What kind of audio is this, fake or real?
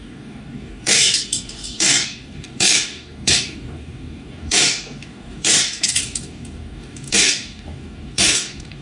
fake